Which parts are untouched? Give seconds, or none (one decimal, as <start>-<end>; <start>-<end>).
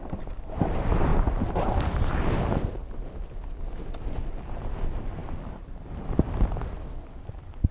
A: 0.0-7.7